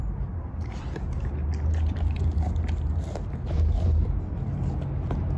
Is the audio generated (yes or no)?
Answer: yes